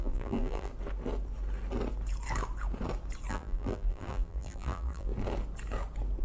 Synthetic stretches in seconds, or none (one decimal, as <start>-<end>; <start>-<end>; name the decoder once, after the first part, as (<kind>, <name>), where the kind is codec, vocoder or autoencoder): 0.0-0.7 (vocoder, BigVGAN v2); 3.3-5.1